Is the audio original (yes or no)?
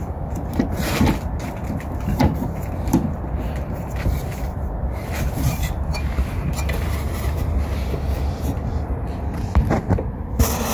no